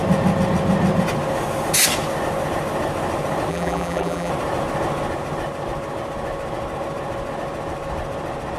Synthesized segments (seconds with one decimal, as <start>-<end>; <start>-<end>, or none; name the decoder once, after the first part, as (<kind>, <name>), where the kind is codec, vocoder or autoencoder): 3.5-4.3 (vocoder, BigVGAN v2)